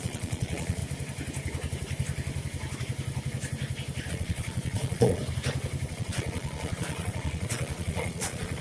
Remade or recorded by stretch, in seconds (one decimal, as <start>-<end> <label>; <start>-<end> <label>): 0.0-0.8 remade; 0.8-4.1 recorded; 4.1-5.2 remade; 5.2-5.9 recorded; 5.9-8.6 remade